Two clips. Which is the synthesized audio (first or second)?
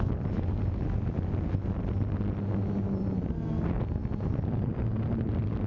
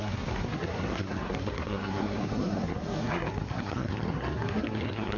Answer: second